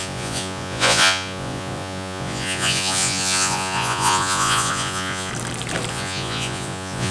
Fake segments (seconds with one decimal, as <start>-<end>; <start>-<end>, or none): 0.0-5.3; 5.9-7.1